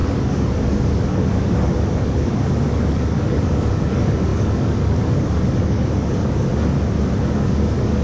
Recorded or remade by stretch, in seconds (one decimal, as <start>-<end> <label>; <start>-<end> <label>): 0.0-6.5 remade; 6.5-7.2 recorded; 7.2-8.0 remade